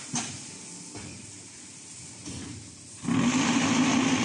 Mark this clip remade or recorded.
recorded